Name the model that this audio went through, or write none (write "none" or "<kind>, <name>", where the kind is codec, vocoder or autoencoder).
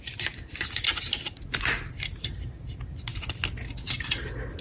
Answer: none